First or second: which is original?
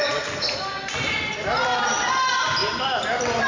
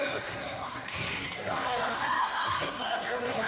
first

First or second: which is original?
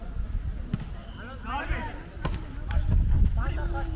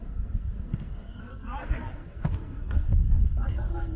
first